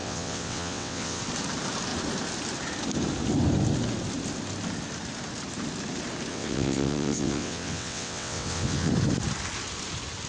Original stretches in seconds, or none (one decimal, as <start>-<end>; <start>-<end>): 1.2-6.3; 8.9-10.3